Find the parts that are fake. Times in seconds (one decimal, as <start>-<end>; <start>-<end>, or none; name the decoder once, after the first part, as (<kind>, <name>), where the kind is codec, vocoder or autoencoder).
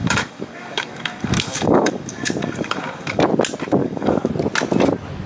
0.0-3.2 (codec, DAC); 3.8-4.3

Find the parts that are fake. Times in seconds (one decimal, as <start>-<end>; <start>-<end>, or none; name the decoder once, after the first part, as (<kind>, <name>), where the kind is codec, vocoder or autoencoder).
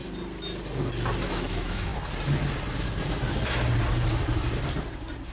1.3-1.9 (autoencoder, DAC-VAE)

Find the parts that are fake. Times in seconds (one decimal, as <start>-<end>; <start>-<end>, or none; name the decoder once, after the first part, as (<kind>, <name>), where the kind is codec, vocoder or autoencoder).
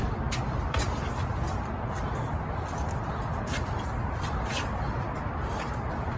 none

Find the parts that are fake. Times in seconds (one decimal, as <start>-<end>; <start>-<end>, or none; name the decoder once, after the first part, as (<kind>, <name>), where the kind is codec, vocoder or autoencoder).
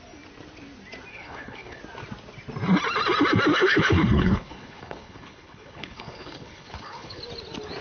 1.1-1.8 (codec, HILCodec); 3.5-7.2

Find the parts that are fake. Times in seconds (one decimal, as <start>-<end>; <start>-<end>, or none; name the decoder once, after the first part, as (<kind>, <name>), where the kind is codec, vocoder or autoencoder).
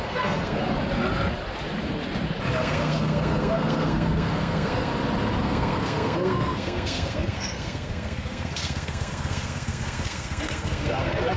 0.0-0.6 (codec, SNAC); 2.6-4.9; 5.4-11.4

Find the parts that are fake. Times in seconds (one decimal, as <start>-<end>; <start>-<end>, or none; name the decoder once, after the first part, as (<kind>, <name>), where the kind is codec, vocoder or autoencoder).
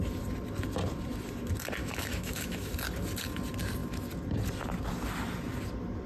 1.8-2.7 (autoencoder, DAC-VAE)